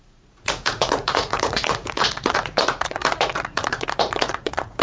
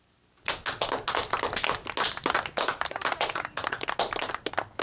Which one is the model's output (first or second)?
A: first